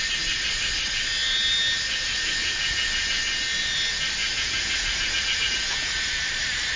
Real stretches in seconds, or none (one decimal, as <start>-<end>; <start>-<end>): 0.0-2.4; 3.2-4.2; 6.1-6.8